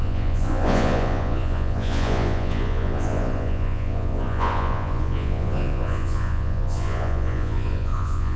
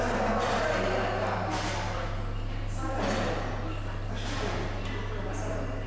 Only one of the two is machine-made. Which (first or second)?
first